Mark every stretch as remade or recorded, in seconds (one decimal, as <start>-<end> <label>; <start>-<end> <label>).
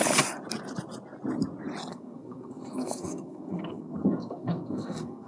0.0-1.9 recorded; 1.9-5.3 remade